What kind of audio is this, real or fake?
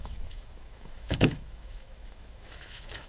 fake